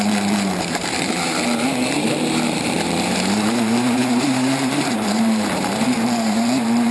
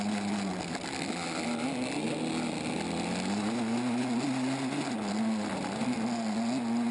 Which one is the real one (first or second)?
second